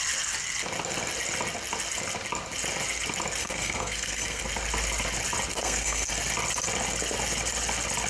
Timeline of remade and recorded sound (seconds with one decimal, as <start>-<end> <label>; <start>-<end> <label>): 0.0-3.4 recorded; 3.4-4.4 remade; 4.4-5.5 recorded; 5.5-6.1 remade; 6.1-8.1 recorded